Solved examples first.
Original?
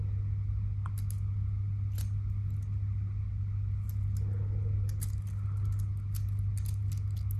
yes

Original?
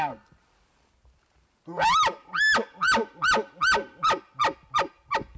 yes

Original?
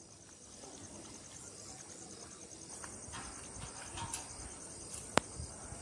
yes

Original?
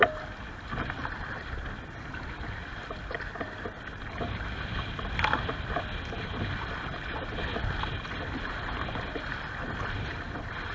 yes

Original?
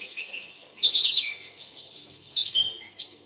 no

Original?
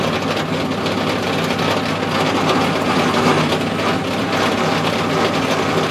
yes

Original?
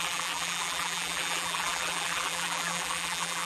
no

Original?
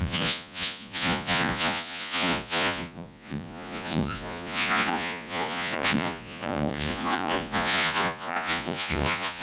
no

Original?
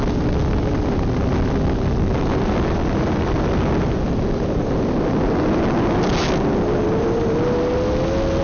yes